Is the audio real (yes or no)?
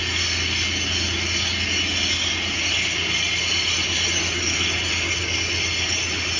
yes